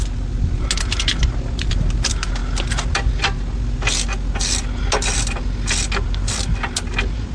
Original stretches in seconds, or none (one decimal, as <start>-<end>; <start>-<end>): 0.0-7.3